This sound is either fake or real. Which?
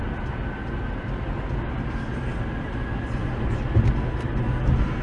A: real